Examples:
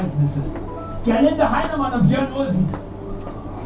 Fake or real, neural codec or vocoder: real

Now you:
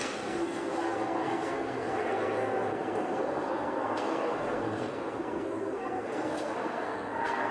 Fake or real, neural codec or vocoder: fake, codec, SNAC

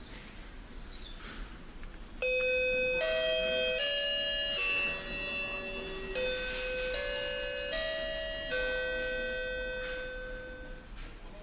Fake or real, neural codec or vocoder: real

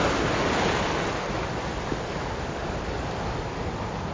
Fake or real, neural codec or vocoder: real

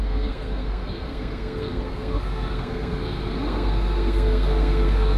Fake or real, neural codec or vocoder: fake, codec, SNAC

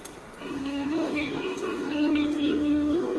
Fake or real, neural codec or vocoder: fake, codec, SNAC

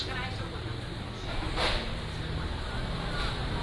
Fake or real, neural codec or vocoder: real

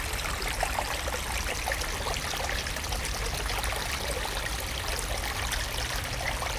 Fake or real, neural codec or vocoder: real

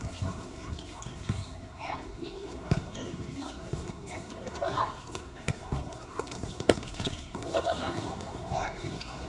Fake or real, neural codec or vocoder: fake, codec, SNAC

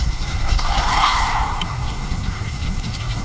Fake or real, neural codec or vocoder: fake, codec, SNAC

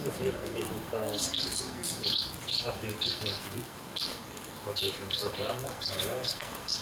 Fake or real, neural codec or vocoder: fake, codec, SNAC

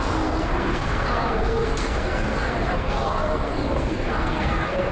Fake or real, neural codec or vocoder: fake, codec, SNAC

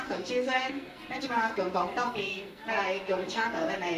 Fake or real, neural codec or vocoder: fake, codec, SNAC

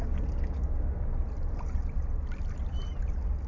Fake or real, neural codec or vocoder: real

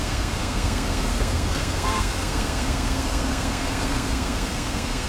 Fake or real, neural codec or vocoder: fake, codec, SNAC